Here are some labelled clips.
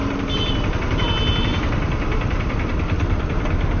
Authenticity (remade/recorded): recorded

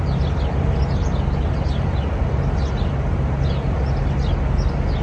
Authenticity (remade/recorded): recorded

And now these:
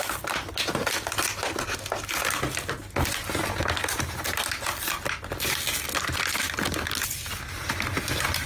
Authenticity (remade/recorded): recorded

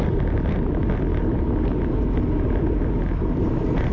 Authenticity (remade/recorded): recorded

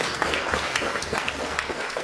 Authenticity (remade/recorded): remade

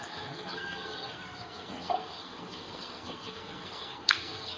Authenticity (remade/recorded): remade